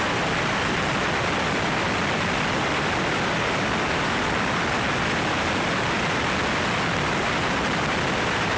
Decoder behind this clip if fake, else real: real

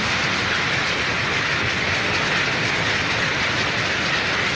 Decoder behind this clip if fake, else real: real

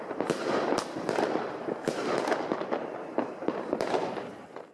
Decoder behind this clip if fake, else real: fake, vocoder, BigVGAN v2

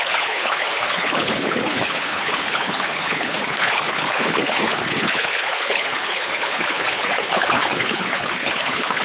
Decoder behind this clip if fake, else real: fake, codec, HILCodec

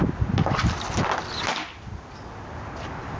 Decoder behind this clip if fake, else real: real